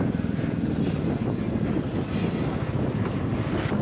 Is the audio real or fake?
real